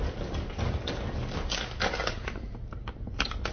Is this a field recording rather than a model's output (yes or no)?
yes